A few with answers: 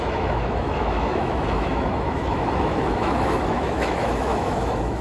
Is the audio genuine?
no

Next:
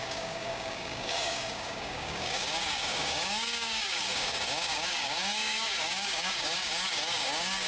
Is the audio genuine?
no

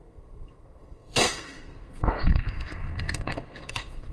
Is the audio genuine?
no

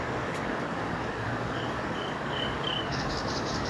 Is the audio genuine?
no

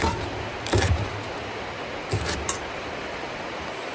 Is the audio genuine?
no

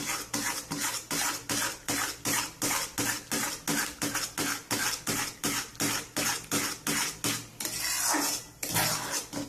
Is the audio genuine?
yes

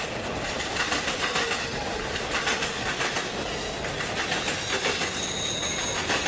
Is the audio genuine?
yes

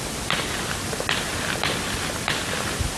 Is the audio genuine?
yes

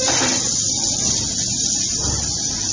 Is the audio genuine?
yes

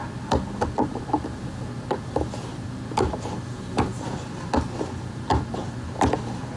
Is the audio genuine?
yes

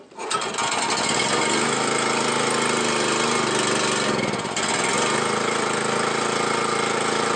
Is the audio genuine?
yes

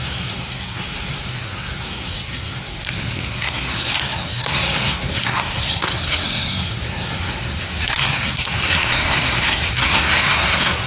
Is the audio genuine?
no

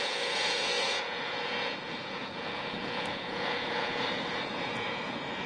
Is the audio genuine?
no